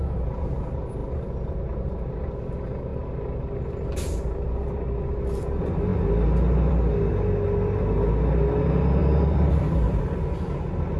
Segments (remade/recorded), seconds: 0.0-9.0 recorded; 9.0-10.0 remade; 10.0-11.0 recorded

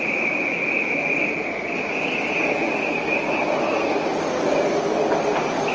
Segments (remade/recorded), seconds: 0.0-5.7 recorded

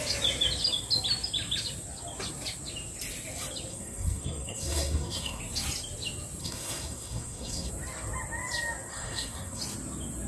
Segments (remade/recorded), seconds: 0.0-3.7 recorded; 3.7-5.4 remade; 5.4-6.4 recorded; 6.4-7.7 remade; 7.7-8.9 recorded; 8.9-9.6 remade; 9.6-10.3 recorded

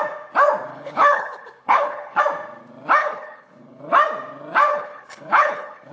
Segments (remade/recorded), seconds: 0.0-0.7 recorded; 0.7-2.2 remade; 2.2-3.0 recorded; 3.0-3.8 remade; 3.8-4.7 recorded; 4.7-5.9 remade